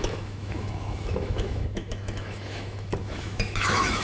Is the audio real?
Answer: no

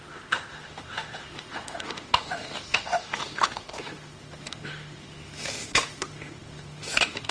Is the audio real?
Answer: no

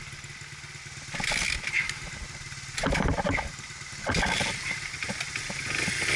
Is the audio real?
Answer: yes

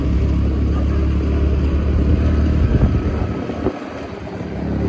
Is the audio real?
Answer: yes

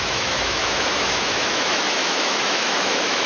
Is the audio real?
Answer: no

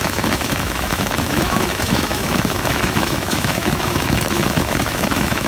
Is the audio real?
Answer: no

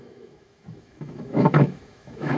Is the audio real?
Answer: no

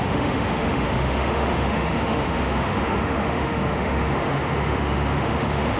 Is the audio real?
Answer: no